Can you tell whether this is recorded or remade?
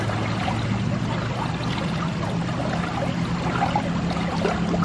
recorded